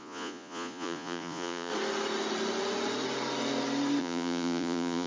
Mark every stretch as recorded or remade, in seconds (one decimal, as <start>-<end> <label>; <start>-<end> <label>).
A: 0.0-1.7 remade; 1.7-4.0 recorded; 4.0-5.1 remade